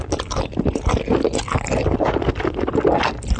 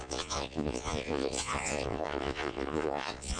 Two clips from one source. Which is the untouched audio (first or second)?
first